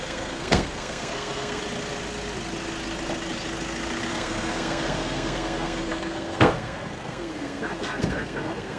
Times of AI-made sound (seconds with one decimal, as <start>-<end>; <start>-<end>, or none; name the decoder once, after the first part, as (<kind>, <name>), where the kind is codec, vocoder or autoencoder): 0.0-1.6 (codec, SNAC); 4.1-8.8